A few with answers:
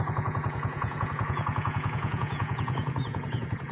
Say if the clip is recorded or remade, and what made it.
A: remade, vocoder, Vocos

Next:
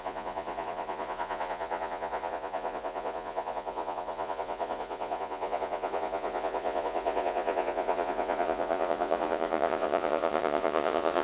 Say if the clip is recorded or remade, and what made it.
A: remade, vocoder, Vocos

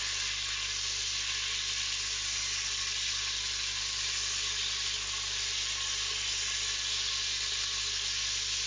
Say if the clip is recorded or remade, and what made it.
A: recorded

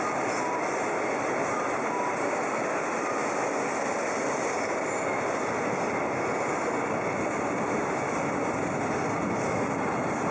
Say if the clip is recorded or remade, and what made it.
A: recorded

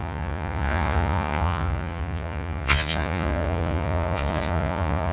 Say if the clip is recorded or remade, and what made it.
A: remade, vocoder, Vocos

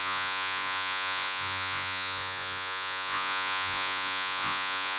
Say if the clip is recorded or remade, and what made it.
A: remade, vocoder, Vocos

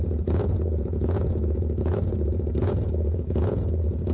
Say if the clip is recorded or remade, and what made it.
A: remade, vocoder, Vocos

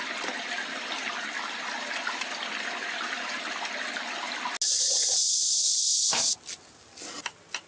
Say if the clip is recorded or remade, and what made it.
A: recorded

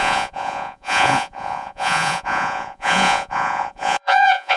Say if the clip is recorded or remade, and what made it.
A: remade, vocoder, Vocos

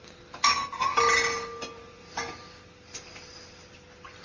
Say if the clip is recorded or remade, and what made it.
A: recorded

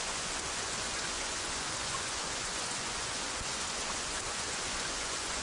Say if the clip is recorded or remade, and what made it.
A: remade, vocoder, Vocos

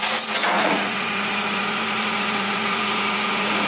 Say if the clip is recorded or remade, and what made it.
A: remade, vocoder, Vocos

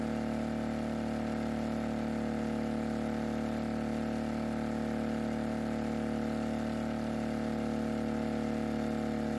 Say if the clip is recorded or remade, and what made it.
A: recorded